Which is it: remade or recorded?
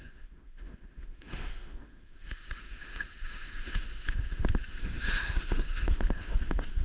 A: remade